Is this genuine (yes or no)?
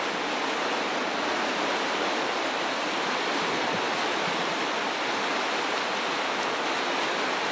yes